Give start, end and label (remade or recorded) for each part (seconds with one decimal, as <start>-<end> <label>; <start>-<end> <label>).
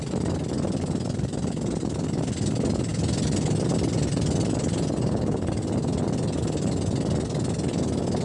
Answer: 0.0-8.2 recorded